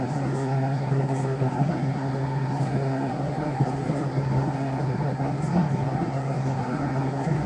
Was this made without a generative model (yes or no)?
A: no